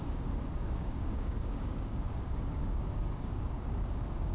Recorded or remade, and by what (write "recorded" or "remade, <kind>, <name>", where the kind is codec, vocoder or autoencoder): remade, codec, DAC